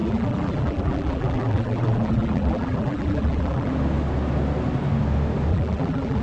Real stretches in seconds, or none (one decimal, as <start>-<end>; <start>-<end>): 3.7-5.5